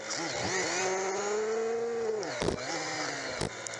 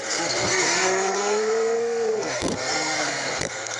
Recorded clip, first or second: first